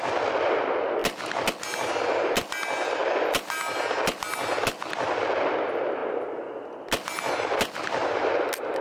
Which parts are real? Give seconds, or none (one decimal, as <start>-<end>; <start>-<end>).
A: 0.0-8.8